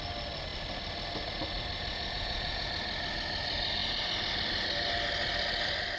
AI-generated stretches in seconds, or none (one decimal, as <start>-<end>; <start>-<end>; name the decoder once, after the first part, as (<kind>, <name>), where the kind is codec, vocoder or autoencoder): 1.9-2.7 (vocoder, Vocos)